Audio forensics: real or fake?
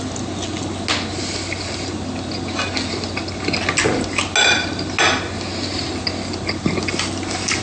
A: real